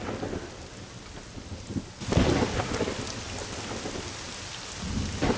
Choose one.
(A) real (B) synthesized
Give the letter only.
A